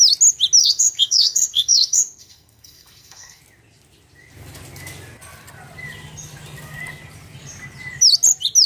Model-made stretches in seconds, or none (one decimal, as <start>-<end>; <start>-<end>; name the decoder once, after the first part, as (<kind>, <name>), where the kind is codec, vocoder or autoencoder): 0.6-3.4 (codec, SNAC)